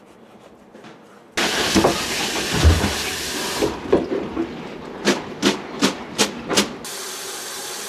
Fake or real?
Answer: real